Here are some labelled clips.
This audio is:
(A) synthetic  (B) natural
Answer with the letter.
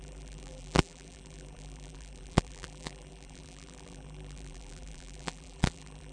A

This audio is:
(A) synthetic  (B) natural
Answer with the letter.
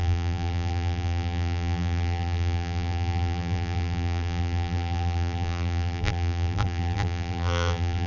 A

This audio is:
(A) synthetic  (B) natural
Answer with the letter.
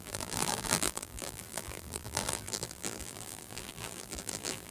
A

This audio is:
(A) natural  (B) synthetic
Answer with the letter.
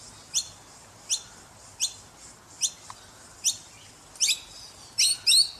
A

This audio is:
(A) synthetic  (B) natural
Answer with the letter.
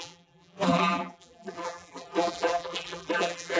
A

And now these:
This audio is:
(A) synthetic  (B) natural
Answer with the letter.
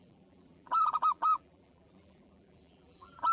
A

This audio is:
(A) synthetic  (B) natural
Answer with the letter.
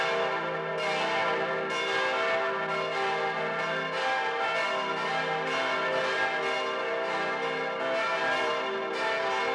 B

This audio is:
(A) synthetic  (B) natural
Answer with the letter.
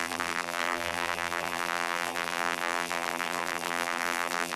A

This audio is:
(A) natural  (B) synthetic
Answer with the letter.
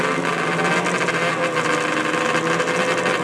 A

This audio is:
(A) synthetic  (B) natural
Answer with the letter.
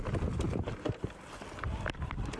B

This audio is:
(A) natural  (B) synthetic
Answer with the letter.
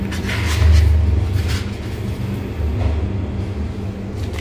A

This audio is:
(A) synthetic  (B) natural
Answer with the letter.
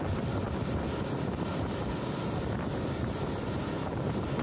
A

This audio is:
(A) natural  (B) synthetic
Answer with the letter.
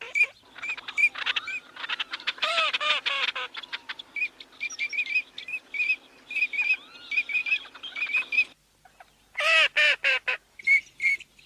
A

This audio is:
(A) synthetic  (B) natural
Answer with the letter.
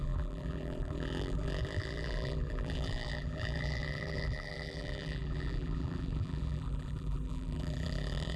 A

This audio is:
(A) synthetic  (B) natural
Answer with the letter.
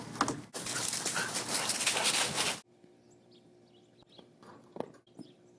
B